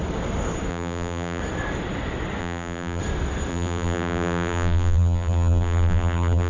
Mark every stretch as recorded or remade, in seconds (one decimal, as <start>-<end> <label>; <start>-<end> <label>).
0.0-0.7 recorded; 0.7-1.4 remade; 1.4-2.4 recorded; 2.4-3.0 remade; 3.0-3.5 recorded; 3.5-6.5 remade